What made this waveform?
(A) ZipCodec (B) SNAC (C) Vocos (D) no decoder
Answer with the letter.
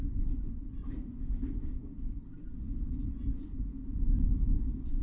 D